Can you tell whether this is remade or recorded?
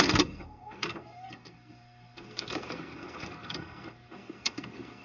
remade